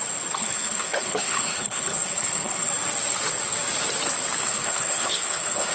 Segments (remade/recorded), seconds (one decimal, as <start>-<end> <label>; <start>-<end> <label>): 0.0-0.4 recorded; 0.4-2.7 remade; 2.7-4.4 recorded; 4.4-5.7 remade